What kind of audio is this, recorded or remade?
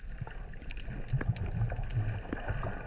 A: recorded